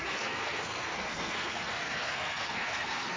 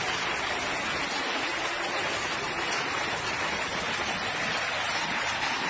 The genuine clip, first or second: second